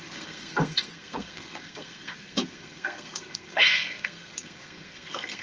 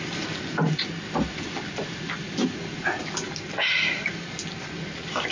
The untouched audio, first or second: second